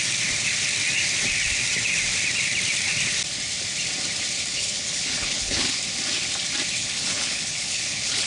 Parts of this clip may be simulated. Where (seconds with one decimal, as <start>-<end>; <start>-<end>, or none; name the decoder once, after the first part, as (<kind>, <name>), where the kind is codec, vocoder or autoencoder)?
4.5-5.8 (codec, HILCodec); 6.8-8.3